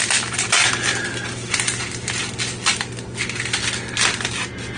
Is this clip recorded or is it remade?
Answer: recorded